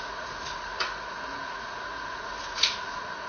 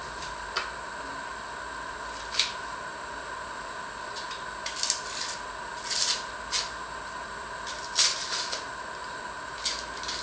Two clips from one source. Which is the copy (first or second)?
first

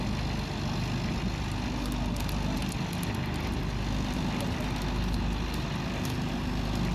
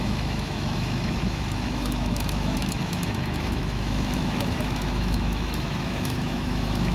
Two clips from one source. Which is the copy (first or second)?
second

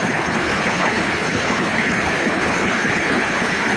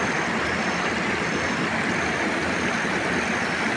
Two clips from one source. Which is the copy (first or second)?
first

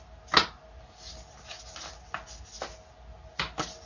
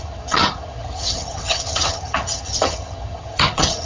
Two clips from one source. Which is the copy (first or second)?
second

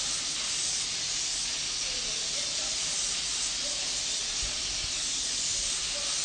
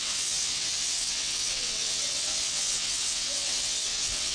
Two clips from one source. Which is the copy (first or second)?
second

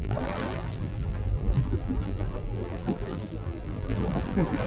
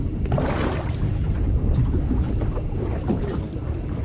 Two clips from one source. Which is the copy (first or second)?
first